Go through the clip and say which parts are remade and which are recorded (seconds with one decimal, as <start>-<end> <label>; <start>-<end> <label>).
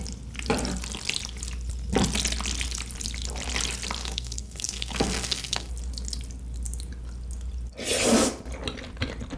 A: 0.0-4.0 recorded; 4.0-5.7 remade; 5.7-9.4 recorded